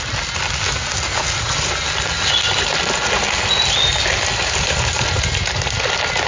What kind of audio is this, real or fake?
real